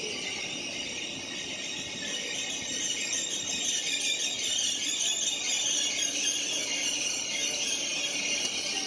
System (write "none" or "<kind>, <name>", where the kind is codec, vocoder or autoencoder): none